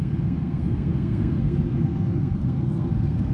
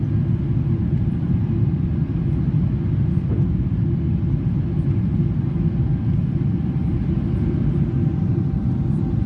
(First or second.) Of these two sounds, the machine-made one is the first